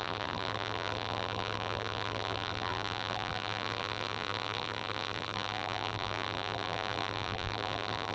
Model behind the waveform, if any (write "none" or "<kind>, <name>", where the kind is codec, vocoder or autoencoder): vocoder, BigVGAN v2